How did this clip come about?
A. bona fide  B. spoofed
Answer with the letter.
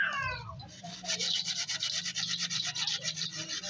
A